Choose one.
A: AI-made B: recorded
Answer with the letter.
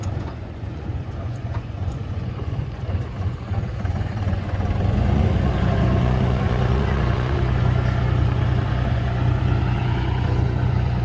A